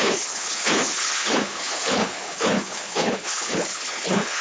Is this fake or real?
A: fake